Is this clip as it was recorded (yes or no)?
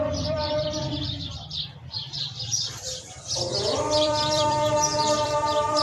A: no